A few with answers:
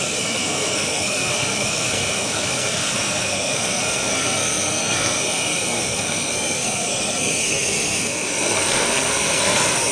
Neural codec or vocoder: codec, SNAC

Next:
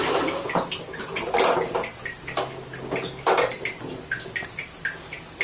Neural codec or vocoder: none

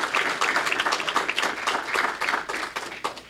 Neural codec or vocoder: none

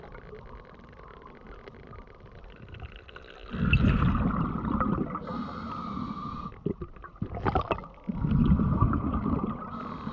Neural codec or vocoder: none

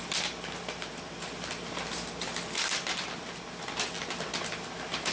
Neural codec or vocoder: none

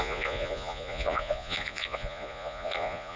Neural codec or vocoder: vocoder, Vocos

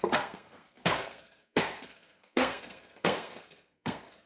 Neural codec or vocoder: codec, SNAC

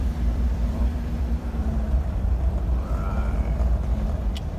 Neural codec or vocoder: vocoder, BigVGAN v2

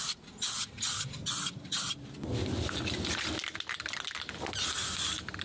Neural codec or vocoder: none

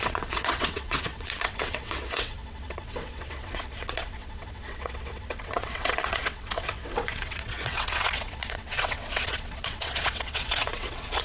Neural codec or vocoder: vocoder, WaveNeXt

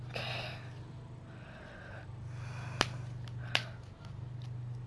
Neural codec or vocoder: none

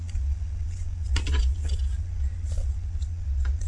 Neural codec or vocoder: vocoder, Vocos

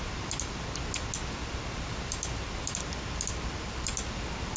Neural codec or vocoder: none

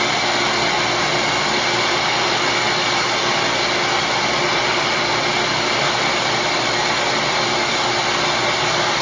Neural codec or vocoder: none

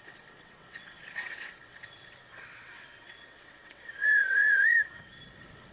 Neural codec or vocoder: vocoder, WaveNeXt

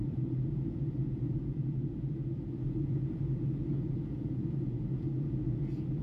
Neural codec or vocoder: vocoder, Vocos